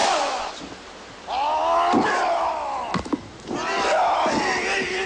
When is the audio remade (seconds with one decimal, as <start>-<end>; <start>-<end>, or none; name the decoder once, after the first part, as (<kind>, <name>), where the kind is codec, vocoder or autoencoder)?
0.0-0.5 (vocoder, Vocos)